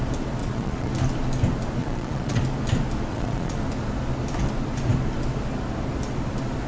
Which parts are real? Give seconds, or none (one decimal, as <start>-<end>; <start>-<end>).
0.0-0.4; 0.9-1.8; 2.4-3.1; 3.6-6.7